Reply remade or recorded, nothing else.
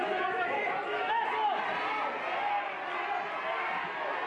recorded